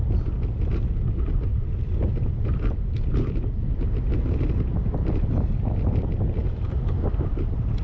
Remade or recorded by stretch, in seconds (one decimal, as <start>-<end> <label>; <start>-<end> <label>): 0.0-6.4 recorded; 6.4-7.3 remade; 7.3-7.8 recorded